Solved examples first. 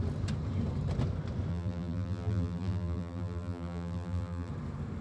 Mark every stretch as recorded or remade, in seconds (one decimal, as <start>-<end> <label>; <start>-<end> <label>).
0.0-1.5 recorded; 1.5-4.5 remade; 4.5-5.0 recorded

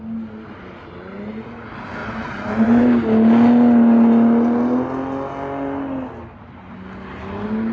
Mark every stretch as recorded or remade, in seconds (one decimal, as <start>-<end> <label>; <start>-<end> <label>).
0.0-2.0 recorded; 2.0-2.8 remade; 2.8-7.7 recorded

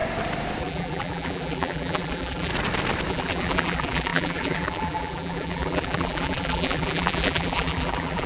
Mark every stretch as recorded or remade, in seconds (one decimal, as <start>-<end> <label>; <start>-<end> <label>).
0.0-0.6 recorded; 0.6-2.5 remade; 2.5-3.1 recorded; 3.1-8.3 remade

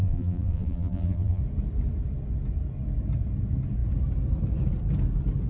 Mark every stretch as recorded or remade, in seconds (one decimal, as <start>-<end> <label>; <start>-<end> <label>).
0.0-1.4 remade; 1.4-5.5 recorded

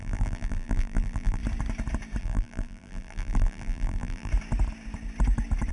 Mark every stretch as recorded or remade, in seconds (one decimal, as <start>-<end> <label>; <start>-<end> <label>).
0.0-1.4 remade; 1.4-2.2 recorded; 2.2-4.3 remade; 4.3-5.7 recorded